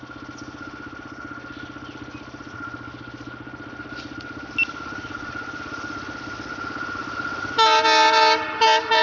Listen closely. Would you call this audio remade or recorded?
recorded